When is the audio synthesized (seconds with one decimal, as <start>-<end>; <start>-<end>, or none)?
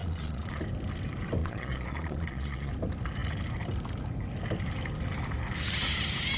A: 0.0-0.6; 1.4-2.7